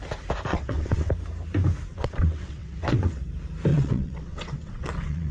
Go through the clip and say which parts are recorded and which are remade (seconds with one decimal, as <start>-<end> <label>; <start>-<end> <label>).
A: 0.0-0.5 recorded; 0.5-1.1 remade; 1.1-1.9 recorded; 1.9-3.2 remade; 3.2-3.7 recorded; 3.7-5.3 remade